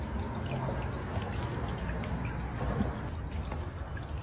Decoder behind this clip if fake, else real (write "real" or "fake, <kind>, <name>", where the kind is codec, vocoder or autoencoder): real